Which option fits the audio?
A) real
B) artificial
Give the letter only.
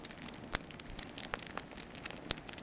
A